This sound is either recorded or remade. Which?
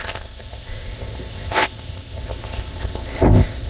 remade